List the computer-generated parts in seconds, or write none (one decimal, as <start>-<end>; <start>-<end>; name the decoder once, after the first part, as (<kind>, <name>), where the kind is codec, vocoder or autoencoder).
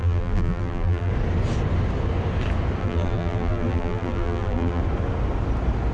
0.0-1.1 (vocoder, BigVGAN v2); 2.8-4.8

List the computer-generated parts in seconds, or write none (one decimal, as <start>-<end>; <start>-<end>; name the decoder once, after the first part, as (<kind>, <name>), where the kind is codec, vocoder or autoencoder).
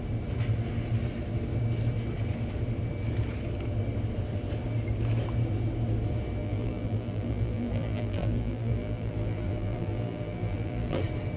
6.4-11.0 (vocoder, BigVGAN v2)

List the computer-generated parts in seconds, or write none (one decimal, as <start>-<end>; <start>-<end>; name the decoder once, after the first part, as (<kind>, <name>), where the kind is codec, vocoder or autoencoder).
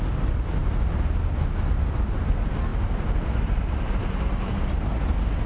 2.7-5.0 (vocoder, BigVGAN v2)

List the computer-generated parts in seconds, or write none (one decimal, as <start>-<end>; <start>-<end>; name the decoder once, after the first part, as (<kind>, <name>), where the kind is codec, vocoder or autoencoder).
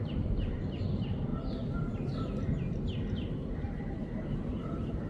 0.0-1.3 (vocoder, BigVGAN v2); 3.8-5.1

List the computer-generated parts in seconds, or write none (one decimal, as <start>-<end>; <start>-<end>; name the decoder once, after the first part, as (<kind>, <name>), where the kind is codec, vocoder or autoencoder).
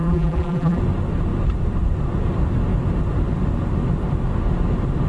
0.0-0.8 (vocoder, BigVGAN v2)